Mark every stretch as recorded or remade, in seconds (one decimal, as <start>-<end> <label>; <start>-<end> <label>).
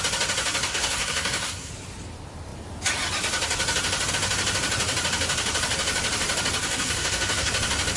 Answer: 0.0-0.7 recorded; 0.7-1.7 remade; 1.7-6.6 recorded; 6.6-7.5 remade; 7.5-8.0 recorded